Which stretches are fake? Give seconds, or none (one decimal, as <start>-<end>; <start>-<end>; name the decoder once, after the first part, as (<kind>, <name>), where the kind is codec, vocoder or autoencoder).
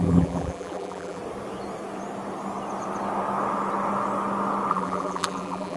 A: 0.0-1.2 (vocoder, BigVGAN v2); 4.7-5.8